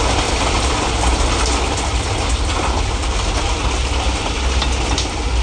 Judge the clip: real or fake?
real